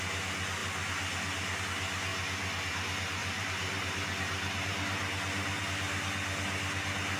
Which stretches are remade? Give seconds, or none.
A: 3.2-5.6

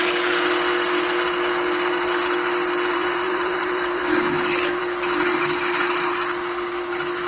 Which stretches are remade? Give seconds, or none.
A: 2.9-4.0

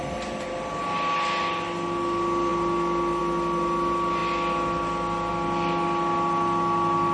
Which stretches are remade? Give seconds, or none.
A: none